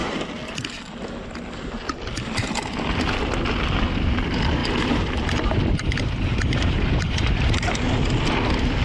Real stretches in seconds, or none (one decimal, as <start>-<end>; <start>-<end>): 0.0-4.6; 7.7-8.8